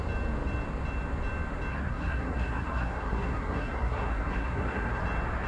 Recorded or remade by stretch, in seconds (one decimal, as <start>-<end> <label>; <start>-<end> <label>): 0.0-1.7 recorded; 1.7-5.0 remade; 5.0-5.5 recorded